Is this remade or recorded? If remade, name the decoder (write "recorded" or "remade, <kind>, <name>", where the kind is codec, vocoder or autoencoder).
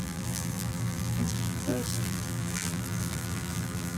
remade, vocoder, BigVGAN v2